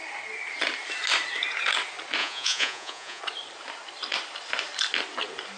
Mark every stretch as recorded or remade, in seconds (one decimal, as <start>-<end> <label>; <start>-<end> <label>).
0.0-2.2 recorded; 2.2-3.2 remade; 3.2-5.6 recorded